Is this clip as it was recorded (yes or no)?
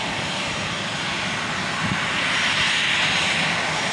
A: yes